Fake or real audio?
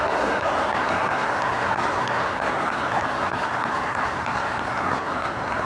fake